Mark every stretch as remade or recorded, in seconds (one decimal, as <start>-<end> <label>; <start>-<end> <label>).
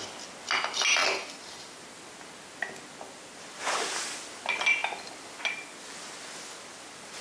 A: 0.0-7.2 recorded